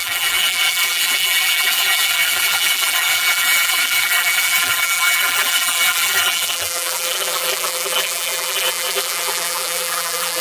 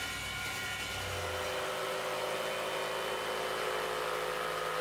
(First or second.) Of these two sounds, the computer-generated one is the first